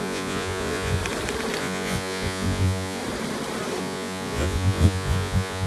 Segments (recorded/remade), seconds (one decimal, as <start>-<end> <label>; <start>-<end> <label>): 0.0-1.0 remade; 1.0-1.6 recorded; 1.6-3.0 remade; 3.0-3.8 recorded; 3.8-5.7 remade